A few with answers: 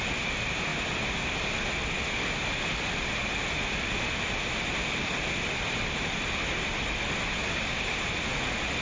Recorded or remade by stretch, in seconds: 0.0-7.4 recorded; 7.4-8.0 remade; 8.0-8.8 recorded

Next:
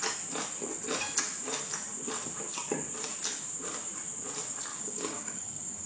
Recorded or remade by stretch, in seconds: 0.0-4.7 recorded; 4.7-5.9 remade